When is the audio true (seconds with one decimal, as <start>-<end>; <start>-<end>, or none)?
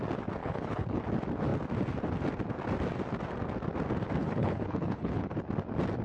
0.0-0.4; 1.0-4.2; 5.4-6.0